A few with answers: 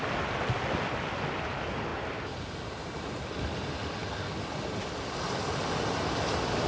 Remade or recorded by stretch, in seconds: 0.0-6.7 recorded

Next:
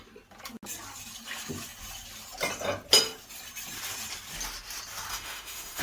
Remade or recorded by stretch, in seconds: 0.0-5.1 recorded; 5.1-5.8 remade

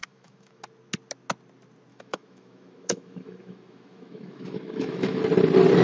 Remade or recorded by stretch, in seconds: 0.0-0.6 remade; 0.6-1.9 recorded; 1.9-5.2 remade; 5.2-5.8 recorded

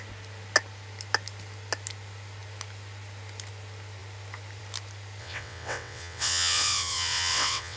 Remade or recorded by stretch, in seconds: 0.0-5.2 recorded; 5.2-7.8 remade

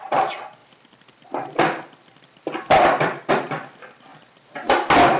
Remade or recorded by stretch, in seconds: 0.0-0.6 recorded; 0.6-3.3 remade; 3.3-4.1 recorded; 4.1-5.2 remade